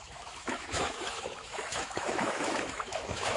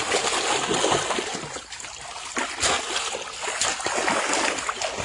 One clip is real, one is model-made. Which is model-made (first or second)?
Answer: first